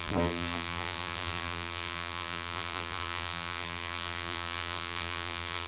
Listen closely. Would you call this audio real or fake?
fake